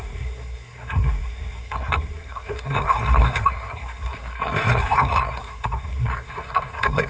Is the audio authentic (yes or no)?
no